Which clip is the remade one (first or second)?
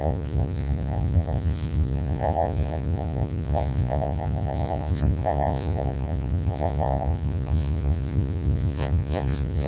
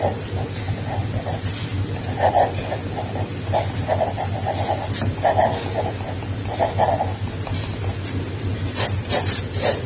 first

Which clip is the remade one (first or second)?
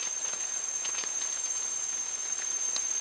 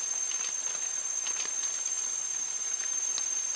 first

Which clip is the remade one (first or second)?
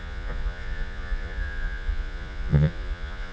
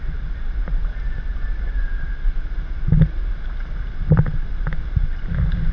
first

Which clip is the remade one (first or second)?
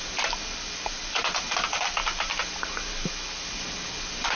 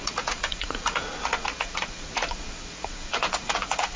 second